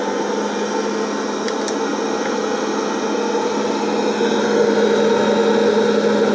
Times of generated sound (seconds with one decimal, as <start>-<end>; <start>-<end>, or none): none